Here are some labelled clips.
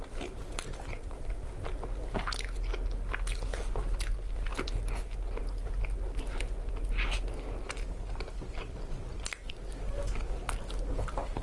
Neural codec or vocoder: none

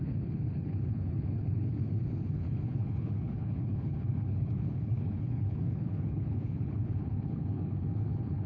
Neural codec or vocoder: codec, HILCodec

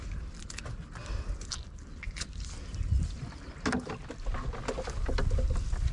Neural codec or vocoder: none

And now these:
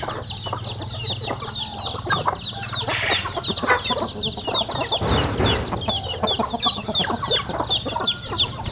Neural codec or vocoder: none